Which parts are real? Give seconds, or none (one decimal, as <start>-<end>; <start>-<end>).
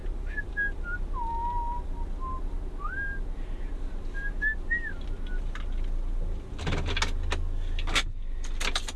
0.5-9.0